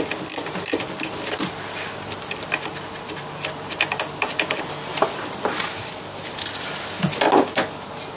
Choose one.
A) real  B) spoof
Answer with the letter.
A